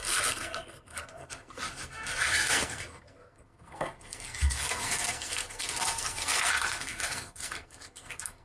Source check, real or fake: fake